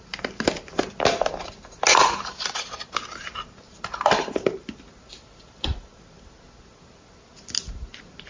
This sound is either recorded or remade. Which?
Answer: recorded